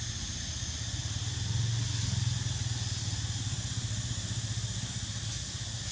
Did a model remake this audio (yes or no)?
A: no